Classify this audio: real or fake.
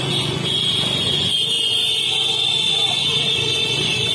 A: fake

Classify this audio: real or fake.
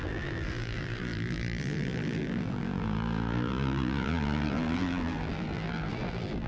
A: fake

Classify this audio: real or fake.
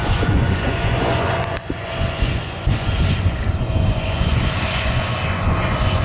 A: fake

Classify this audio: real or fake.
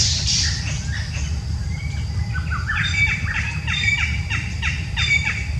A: fake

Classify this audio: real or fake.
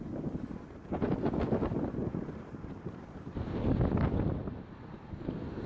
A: real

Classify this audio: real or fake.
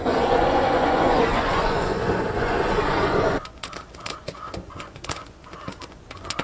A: fake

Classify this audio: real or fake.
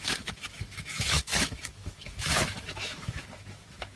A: fake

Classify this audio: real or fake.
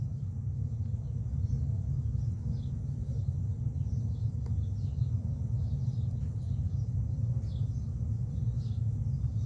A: real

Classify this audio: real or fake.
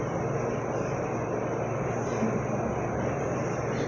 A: real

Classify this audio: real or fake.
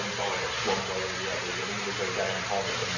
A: real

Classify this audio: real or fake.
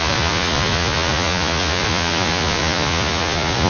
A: fake